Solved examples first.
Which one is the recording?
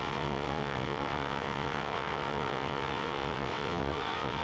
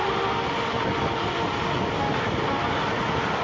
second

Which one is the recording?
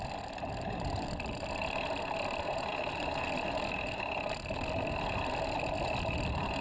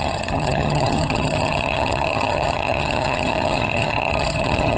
first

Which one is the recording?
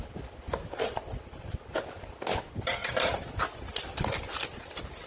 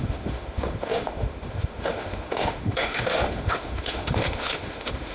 first